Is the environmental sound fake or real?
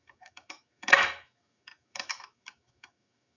fake